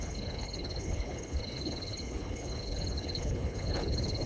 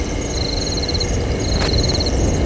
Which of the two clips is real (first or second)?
second